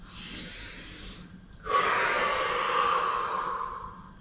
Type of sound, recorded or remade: recorded